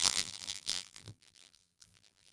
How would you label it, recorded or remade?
remade